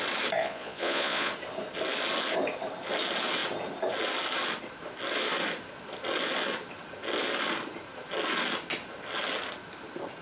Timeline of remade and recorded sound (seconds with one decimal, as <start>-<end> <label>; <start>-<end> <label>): 0.0-0.4 recorded; 0.4-1.3 remade; 1.3-10.2 recorded